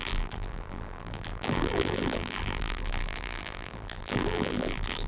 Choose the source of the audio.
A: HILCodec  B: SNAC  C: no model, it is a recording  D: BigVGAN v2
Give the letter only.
D